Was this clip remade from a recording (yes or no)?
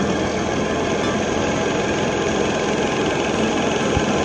no